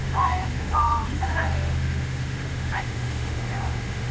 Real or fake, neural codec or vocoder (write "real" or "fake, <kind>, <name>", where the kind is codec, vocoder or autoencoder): fake, autoencoder, DAC-VAE